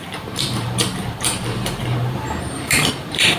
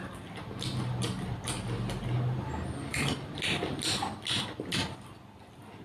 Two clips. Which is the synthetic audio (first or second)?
first